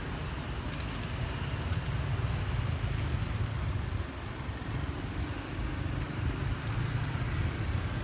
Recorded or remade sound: recorded